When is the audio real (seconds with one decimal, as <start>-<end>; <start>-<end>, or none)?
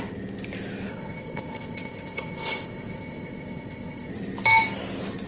0.0-0.9; 4.1-5.3